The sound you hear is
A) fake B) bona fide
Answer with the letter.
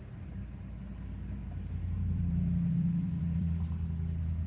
A